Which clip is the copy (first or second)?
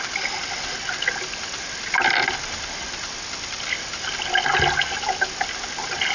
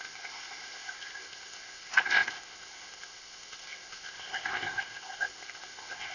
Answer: second